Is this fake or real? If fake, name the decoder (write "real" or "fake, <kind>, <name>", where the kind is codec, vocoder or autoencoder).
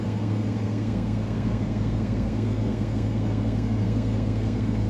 fake, codec, SNAC